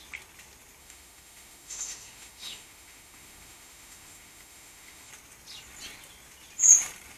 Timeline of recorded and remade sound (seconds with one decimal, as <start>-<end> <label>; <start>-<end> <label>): 0.0-0.8 recorded; 0.8-5.1 remade; 5.1-7.2 recorded